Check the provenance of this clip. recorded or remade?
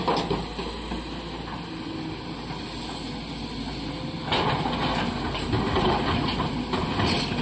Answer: recorded